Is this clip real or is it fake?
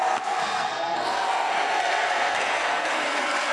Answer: fake